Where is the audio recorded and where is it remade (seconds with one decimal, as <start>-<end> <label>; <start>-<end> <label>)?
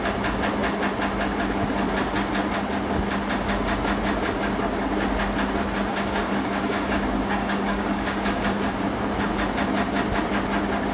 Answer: 0.0-5.9 recorded; 5.9-8.8 remade; 8.8-10.9 recorded